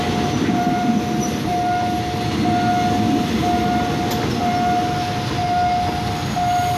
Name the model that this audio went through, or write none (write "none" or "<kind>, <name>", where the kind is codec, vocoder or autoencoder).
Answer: none